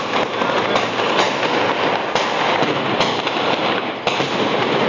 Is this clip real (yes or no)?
yes